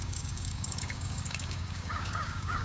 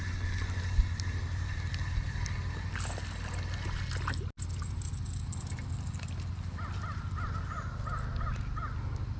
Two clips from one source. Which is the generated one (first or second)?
first